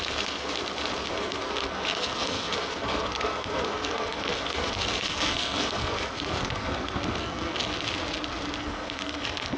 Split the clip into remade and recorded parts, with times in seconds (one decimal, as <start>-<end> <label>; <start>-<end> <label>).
0.0-0.5 remade; 0.5-1.1 recorded; 1.1-7.7 remade; 7.7-8.6 recorded; 8.6-9.6 remade

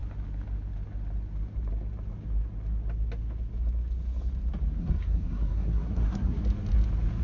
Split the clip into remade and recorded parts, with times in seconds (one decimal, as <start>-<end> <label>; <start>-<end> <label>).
0.0-4.8 recorded; 4.8-6.4 remade; 6.4-7.2 recorded